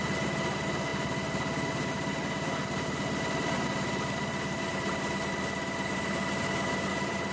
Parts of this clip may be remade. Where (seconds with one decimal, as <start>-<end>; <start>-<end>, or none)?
none